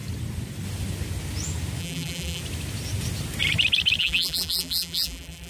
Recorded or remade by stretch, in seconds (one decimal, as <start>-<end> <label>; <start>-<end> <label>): 0.0-1.8 recorded; 1.8-2.4 remade; 2.4-4.0 recorded; 4.0-5.5 remade